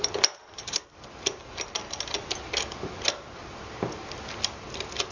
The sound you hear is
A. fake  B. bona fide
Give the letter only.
B